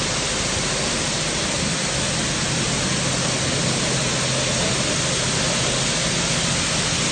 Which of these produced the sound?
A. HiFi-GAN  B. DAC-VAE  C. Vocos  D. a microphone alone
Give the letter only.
D